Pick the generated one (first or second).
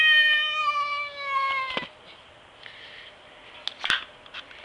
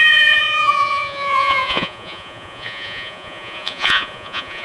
second